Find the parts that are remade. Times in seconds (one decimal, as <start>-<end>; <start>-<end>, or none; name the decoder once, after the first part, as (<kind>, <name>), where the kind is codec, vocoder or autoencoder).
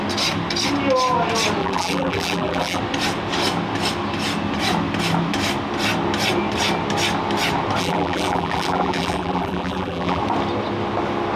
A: 1.6-2.8 (vocoder, BigVGAN v2); 7.8-10.2